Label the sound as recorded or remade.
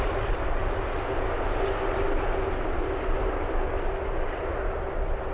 recorded